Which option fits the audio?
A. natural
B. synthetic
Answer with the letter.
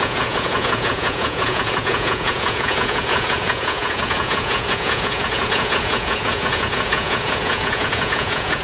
B